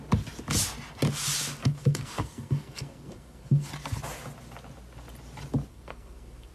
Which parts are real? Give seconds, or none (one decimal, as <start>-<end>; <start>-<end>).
0.0-1.6; 3.7-5.7